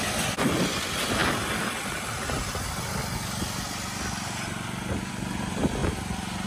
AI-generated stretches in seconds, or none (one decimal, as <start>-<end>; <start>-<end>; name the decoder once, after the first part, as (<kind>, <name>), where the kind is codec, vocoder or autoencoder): none